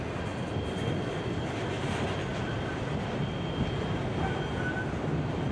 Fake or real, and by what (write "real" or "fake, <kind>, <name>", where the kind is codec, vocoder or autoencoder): real